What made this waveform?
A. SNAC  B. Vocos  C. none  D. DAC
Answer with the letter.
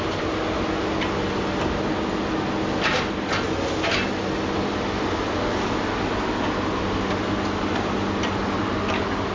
C